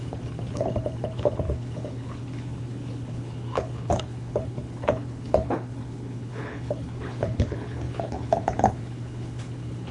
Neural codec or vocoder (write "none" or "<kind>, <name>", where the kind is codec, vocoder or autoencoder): codec, HILCodec